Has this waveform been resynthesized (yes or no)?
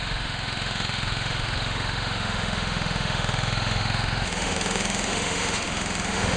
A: yes